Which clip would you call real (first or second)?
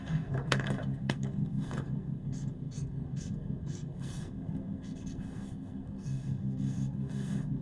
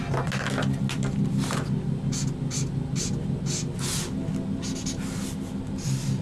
second